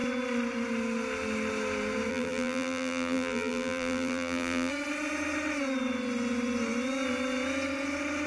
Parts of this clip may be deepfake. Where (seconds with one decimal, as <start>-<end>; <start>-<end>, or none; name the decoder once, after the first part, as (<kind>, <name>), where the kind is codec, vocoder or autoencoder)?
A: 2.1-4.7 (vocoder, BigVGAN v2)